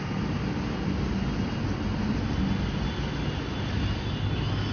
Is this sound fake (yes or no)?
no